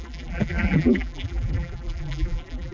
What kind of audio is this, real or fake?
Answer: fake